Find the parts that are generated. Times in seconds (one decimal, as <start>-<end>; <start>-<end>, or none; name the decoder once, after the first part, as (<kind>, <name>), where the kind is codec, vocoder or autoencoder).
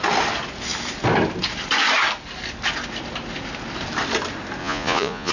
4.6-5.3 (vocoder, Vocos)